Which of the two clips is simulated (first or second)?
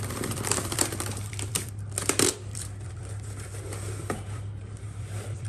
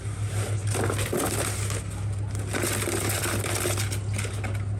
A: first